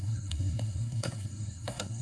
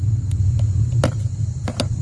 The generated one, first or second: first